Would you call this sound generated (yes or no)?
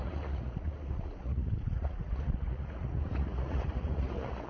yes